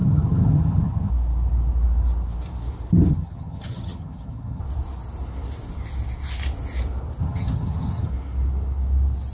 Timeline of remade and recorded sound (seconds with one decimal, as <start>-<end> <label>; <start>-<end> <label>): 0.0-1.1 remade; 1.1-3.1 recorded; 3.1-4.6 remade; 4.6-7.2 recorded; 7.2-8.1 remade; 8.1-9.3 recorded